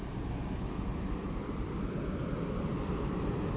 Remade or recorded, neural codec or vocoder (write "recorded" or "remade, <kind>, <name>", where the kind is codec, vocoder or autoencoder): recorded